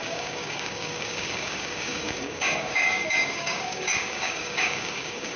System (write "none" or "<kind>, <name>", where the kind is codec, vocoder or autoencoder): codec, DAC